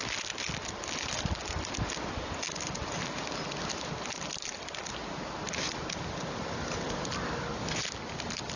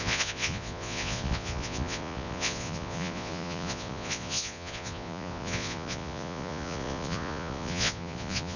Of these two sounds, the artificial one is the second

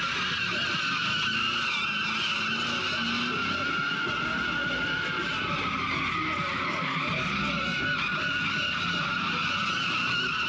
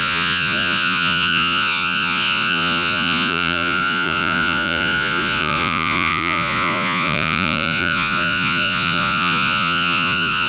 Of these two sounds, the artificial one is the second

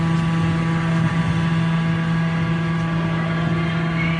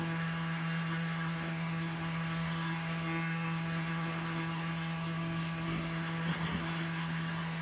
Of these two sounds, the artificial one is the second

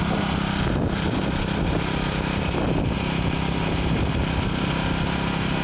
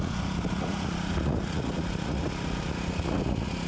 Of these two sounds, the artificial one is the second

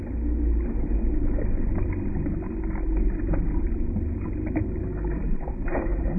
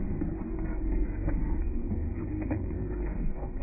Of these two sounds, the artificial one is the second